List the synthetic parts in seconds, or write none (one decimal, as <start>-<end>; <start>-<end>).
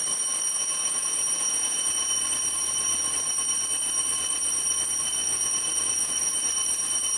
0.5-2.1; 5.2-6.4